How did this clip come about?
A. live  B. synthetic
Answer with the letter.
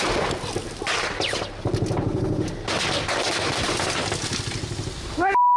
A